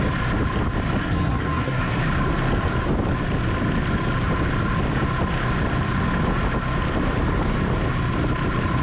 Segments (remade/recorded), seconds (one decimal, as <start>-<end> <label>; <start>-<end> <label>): 0.0-1.0 recorded; 1.0-2.0 remade; 2.0-8.8 recorded